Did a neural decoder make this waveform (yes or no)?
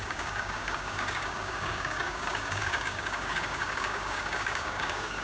yes